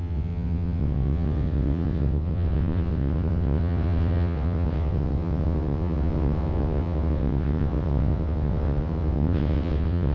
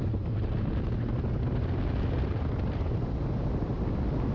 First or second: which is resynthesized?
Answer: first